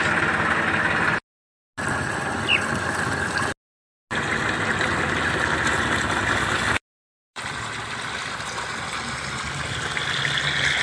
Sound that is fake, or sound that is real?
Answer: real